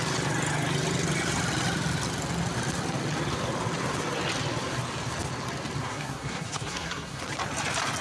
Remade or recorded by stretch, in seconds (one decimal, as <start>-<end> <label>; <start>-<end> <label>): 0.0-5.8 recorded; 5.8-7.2 remade; 7.2-8.0 recorded